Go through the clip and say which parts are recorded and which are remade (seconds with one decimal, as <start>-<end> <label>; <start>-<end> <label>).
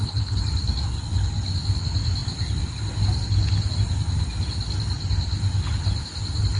0.0-6.6 recorded